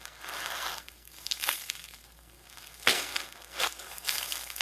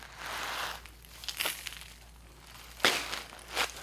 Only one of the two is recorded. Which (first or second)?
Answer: second